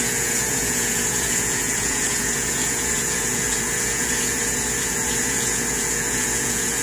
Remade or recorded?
remade